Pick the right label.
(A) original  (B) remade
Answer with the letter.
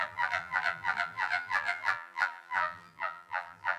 B